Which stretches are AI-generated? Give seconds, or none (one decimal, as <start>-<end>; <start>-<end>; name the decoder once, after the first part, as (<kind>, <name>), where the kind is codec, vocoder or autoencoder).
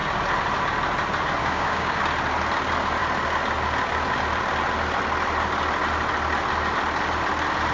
1.4-2.0 (codec, DAC)